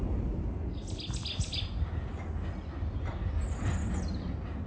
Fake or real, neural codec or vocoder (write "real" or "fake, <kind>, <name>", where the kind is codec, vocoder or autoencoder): real